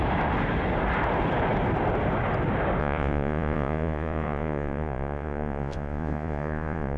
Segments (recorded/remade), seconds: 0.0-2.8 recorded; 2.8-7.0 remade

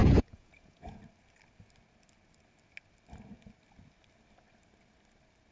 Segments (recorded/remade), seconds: 0.0-1.0 remade; 1.0-5.5 recorded

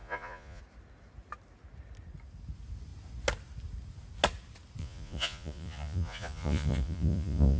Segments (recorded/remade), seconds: 0.0-0.6 remade; 0.6-4.8 recorded; 4.8-7.6 remade

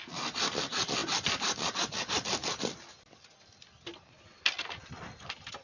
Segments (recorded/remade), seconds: 0.0-5.6 recorded

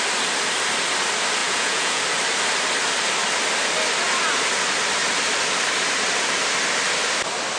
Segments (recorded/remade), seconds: 0.0-1.4 recorded; 1.4-2.0 remade; 2.0-7.6 recorded

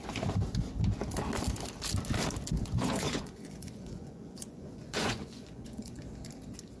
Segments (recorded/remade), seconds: 0.0-2.6 recorded; 2.6-6.0 remade; 6.0-6.8 recorded

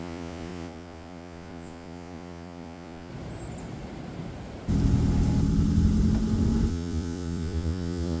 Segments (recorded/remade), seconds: 0.0-3.1 remade; 3.1-6.7 recorded; 6.7-8.2 remade

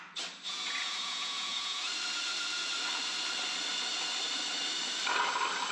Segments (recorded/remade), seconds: 0.0-0.5 recorded; 0.5-1.9 remade; 1.9-5.7 recorded